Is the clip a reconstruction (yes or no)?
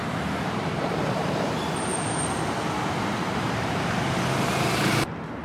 yes